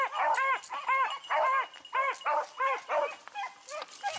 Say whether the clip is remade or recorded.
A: recorded